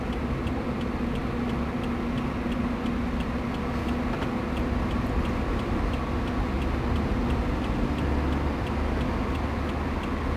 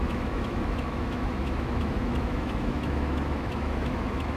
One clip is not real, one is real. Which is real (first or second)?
first